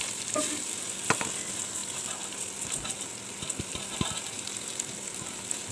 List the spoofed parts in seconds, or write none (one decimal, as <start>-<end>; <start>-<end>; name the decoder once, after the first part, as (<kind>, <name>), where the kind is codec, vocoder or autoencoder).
none